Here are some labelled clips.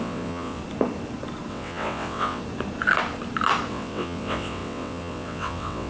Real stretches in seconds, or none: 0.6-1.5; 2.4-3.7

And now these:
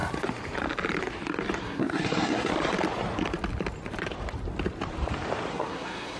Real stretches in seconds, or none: 0.0-1.6; 2.5-5.5

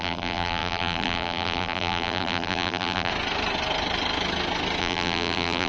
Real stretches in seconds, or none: 3.1-4.8

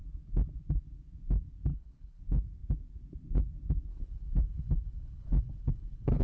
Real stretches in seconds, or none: 0.0-1.7; 2.2-3.9